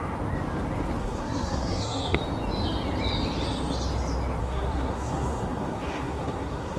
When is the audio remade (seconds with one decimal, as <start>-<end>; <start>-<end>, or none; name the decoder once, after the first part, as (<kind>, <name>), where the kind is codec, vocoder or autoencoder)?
1.0-2.2 (codec, SNAC); 4.4-6.8